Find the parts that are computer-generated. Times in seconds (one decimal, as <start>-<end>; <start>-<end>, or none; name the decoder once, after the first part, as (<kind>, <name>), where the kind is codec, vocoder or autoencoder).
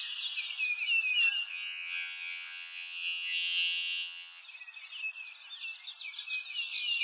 1.5-4.4 (vocoder, WaveNeXt)